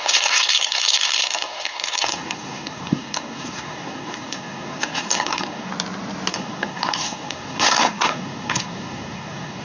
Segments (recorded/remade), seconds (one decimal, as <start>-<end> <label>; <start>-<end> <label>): 0.0-5.7 remade; 5.7-6.3 recorded; 6.3-9.6 remade